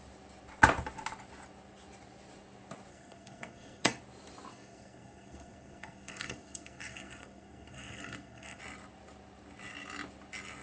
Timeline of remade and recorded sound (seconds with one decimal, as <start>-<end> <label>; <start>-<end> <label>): 0.0-2.9 recorded; 2.9-4.0 remade; 4.0-4.5 recorded; 4.5-8.6 remade; 8.6-10.6 recorded